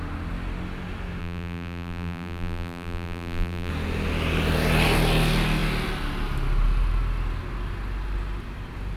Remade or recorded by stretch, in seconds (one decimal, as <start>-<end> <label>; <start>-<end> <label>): 0.0-1.2 recorded; 1.2-3.7 remade; 3.7-9.0 recorded